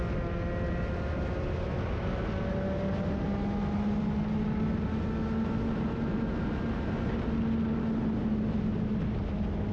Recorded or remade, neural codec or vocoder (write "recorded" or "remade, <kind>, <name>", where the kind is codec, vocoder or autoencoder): recorded